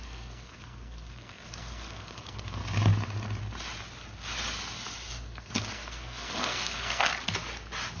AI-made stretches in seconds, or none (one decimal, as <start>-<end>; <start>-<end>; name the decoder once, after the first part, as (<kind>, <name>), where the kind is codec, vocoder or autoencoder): 0.0-2.6 (codec, SNAC); 5.1-7.1